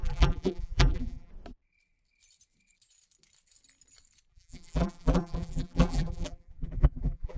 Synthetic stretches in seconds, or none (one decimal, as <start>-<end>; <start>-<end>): 0.0-1.3; 4.3-7.4